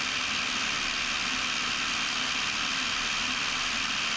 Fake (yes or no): no